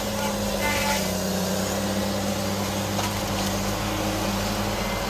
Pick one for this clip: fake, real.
real